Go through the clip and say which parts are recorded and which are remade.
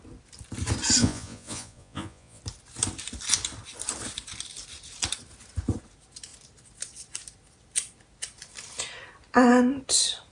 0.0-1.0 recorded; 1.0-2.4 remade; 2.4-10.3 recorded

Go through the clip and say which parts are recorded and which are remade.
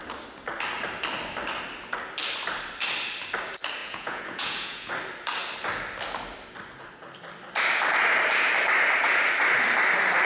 0.0-3.8 recorded; 3.8-4.9 remade; 4.9-10.3 recorded